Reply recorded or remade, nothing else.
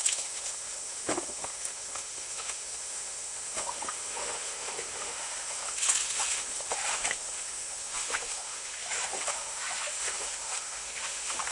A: remade